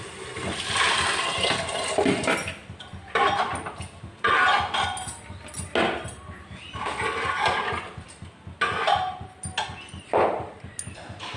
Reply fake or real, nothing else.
real